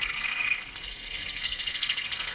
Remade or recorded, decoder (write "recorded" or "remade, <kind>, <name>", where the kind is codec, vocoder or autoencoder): remade, codec, SNAC